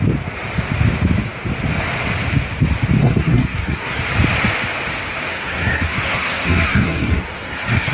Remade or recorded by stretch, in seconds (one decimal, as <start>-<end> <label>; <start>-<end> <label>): 0.0-3.0 recorded; 3.0-4.0 remade; 4.0-5.3 recorded; 5.3-7.9 remade